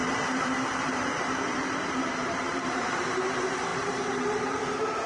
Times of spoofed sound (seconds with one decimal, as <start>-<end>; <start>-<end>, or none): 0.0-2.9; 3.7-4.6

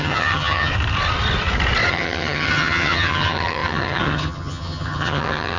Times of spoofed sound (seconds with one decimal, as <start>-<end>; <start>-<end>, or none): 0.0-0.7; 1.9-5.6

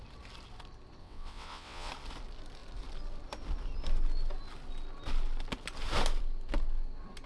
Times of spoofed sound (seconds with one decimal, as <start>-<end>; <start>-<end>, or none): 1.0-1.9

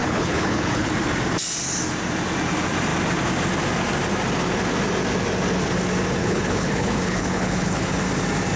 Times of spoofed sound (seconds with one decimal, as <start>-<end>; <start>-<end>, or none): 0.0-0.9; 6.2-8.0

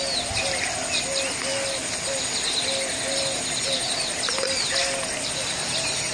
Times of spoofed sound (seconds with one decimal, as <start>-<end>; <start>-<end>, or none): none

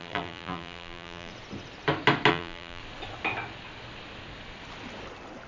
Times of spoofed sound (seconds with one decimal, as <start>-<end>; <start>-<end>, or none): 0.0-1.3; 2.3-2.8

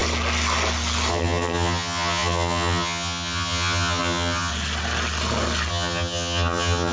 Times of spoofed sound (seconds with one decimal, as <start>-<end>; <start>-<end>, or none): 1.1-4.5; 5.7-6.9